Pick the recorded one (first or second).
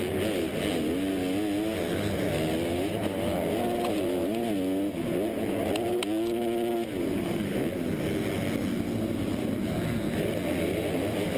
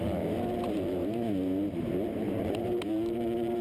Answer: first